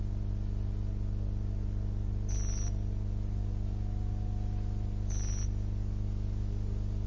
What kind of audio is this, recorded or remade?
recorded